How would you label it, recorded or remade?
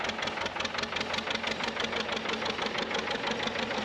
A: recorded